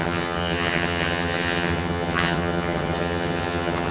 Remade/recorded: remade